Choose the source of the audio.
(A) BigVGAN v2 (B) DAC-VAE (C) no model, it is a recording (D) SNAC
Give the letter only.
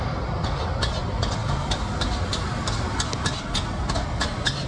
C